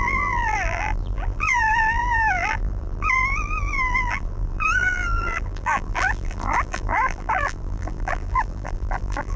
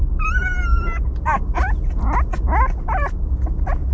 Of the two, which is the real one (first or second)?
second